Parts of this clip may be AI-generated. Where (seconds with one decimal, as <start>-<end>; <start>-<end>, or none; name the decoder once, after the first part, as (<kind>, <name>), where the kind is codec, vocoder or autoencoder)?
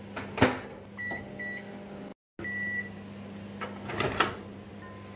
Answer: none